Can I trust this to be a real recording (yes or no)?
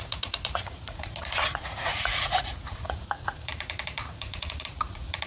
no